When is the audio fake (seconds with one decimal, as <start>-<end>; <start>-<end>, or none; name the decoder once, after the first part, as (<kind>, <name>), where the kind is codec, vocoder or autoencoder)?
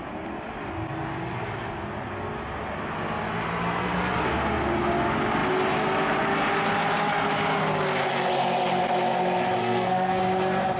9.6-10.2 (codec, SNAC)